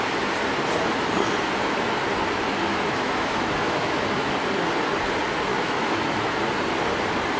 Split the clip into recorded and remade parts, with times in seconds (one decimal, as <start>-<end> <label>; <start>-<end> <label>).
0.0-2.7 recorded; 2.7-4.3 remade; 4.3-5.5 recorded; 5.5-6.4 remade; 6.4-7.4 recorded